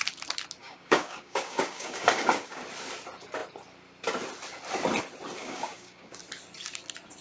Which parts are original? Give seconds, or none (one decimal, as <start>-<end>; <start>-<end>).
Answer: 0.0-0.6; 2.6-5.4; 6.2-7.2